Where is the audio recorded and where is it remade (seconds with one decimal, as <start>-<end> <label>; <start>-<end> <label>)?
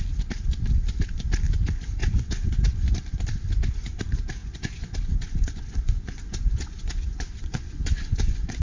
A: 0.0-2.0 recorded; 2.0-2.9 remade; 2.9-4.4 recorded; 4.4-8.6 remade